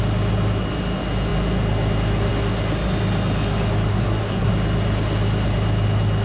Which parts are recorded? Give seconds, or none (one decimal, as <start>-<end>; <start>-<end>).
0.0-3.9; 4.5-6.2